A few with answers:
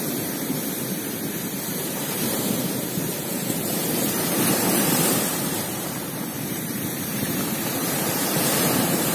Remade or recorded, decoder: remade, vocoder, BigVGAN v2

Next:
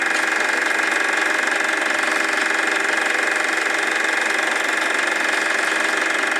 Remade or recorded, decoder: recorded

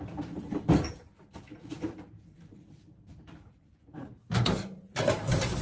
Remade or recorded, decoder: remade, vocoder, BigVGAN v2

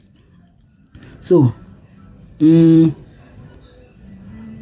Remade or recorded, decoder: remade, vocoder, BigVGAN v2